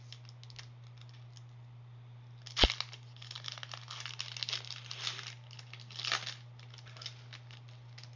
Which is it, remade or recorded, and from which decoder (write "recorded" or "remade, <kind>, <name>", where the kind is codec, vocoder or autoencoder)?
recorded